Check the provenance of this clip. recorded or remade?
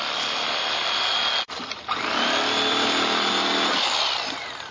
remade